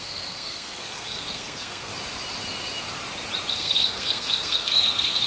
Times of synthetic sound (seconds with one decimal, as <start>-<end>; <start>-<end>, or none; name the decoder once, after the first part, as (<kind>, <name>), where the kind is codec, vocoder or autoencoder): 0.0-1.9 (codec, SNAC); 3.5-5.3